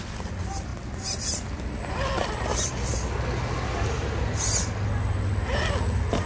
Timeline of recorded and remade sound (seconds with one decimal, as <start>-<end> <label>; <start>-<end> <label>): 0.0-2.9 remade; 2.9-6.3 recorded